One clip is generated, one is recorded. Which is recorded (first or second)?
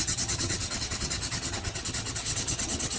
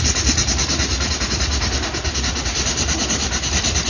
second